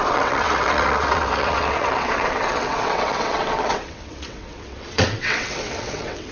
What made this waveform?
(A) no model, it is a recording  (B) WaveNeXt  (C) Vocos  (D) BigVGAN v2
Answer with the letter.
B